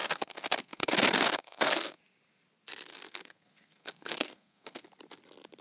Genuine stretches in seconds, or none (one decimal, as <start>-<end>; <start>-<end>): 2.0-2.9; 4.8-5.6